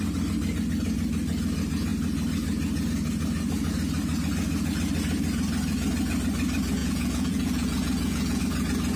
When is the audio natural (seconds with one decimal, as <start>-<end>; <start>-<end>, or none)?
0.0-6.8; 8.4-9.0